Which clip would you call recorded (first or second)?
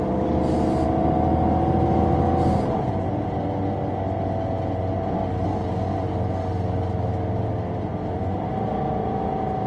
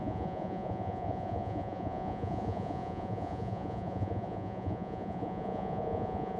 first